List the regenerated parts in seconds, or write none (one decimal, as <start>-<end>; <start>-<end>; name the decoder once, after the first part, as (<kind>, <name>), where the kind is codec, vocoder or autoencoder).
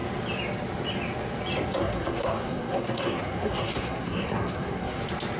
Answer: 1.8-5.0 (codec, SNAC)